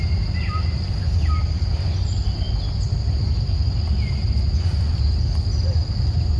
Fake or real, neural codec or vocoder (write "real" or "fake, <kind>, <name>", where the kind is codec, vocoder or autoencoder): real